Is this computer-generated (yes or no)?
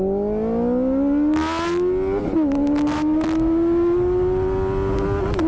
no